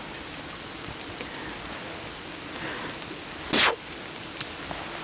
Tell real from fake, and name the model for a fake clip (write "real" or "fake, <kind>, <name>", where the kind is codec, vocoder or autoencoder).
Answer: real